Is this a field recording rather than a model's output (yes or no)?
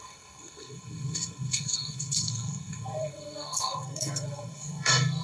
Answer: no